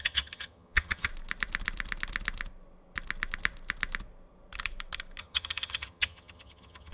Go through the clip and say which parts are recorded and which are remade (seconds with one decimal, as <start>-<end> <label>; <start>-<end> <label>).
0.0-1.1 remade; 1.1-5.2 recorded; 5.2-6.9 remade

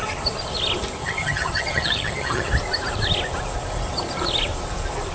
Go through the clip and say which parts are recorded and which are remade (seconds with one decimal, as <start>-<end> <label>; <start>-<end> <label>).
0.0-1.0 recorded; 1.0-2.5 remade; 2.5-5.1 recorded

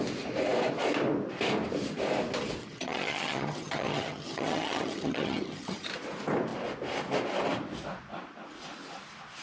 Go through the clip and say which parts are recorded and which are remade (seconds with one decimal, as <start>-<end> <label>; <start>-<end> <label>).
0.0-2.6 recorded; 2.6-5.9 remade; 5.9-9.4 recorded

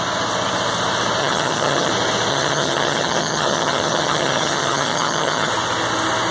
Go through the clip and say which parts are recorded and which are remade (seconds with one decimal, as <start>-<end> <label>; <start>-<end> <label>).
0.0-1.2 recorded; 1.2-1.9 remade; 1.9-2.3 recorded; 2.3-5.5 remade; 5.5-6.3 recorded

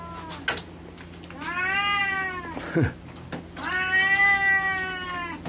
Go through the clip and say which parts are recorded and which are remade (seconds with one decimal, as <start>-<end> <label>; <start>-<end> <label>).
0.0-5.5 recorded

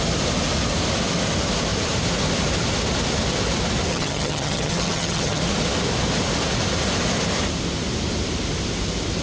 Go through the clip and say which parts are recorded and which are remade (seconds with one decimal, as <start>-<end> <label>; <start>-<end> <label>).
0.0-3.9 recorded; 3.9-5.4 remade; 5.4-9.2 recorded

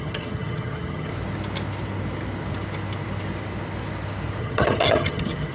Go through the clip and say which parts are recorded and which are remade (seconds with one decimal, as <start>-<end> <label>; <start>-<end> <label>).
0.0-1.1 remade; 1.1-4.4 recorded; 4.4-5.5 remade

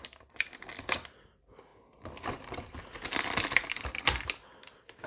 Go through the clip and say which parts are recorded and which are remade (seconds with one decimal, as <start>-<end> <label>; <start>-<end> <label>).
0.0-5.1 recorded